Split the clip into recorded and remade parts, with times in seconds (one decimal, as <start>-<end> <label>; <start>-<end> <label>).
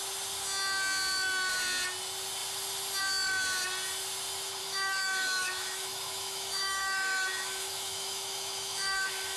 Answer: 0.0-4.6 recorded; 4.6-9.4 remade